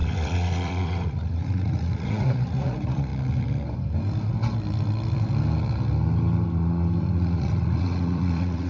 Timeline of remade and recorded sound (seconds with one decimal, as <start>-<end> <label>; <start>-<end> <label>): 0.0-3.1 remade; 3.1-7.0 recorded; 7.0-8.7 remade